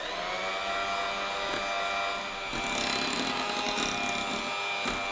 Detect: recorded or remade recorded